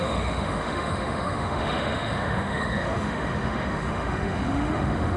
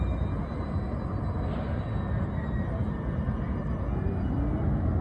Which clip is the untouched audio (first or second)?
second